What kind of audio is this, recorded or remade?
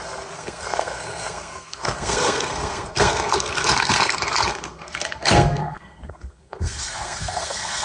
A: remade